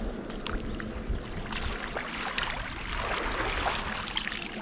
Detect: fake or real real